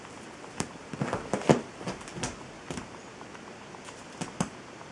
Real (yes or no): yes